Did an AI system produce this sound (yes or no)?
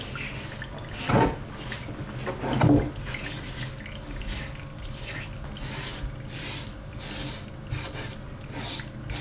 no